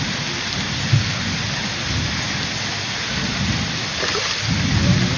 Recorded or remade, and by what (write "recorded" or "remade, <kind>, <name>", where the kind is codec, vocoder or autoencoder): recorded